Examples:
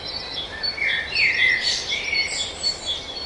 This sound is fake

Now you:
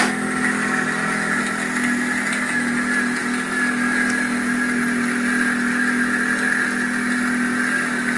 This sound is real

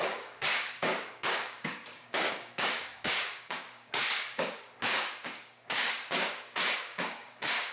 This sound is fake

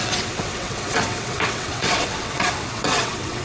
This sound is fake